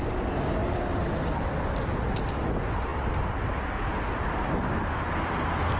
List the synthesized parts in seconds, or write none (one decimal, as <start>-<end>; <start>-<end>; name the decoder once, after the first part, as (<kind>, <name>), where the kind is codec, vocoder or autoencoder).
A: none